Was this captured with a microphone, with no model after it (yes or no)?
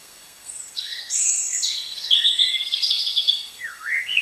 no